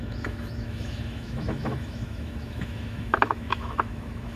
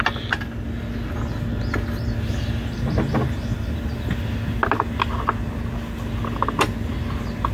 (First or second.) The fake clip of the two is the first